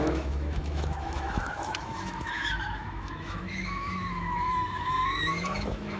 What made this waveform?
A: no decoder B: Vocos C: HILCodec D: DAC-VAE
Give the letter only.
D